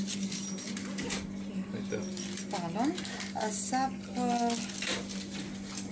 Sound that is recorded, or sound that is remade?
recorded